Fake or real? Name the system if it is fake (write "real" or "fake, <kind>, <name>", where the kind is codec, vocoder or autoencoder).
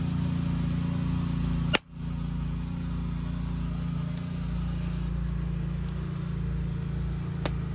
real